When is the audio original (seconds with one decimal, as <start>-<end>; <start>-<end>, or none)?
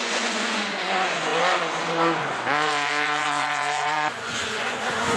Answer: none